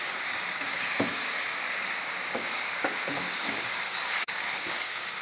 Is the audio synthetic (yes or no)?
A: yes